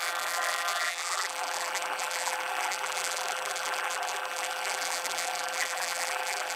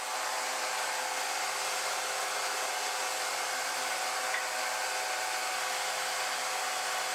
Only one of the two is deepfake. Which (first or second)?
first